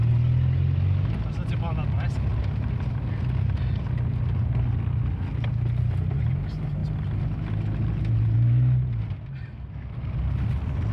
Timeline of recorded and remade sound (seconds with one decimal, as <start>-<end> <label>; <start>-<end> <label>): 0.0-10.9 recorded